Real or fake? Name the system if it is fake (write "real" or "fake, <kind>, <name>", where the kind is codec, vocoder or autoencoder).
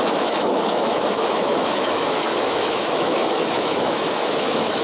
fake, autoencoder, DAC-VAE